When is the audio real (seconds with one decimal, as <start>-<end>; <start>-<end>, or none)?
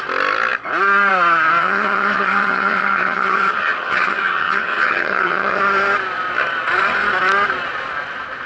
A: 0.0-1.6; 5.6-8.5